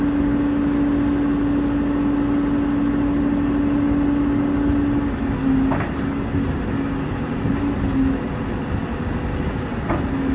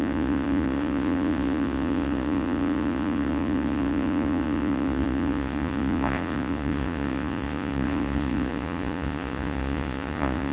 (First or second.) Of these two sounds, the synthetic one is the second